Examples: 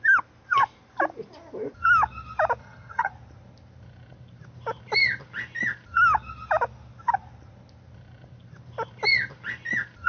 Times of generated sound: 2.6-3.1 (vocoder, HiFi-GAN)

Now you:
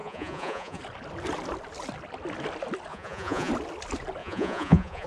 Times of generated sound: 0.0-0.8 (vocoder, Vocos); 2.9-3.5; 4.2-5.1

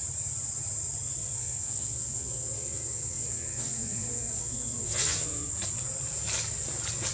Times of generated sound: 1.2-5.5 (vocoder, WaveNeXt)

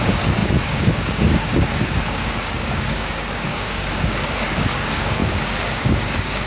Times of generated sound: 0.0-6.5 (codec, DAC)